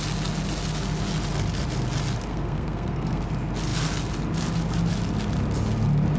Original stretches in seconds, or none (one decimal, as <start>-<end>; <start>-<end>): 0.0-2.3; 3.2-6.2